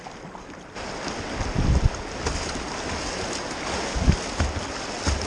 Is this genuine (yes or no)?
yes